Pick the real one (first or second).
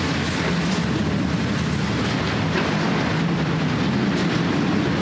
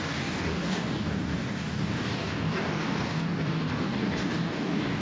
first